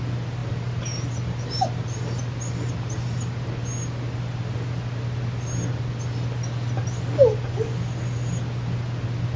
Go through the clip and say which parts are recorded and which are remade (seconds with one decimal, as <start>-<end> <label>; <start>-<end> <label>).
0.0-0.4 recorded; 0.4-2.5 remade; 2.5-9.4 recorded